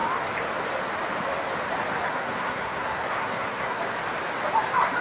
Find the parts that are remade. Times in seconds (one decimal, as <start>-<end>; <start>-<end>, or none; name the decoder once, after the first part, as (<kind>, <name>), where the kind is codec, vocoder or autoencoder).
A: 2.1-3.8 (codec, SNAC)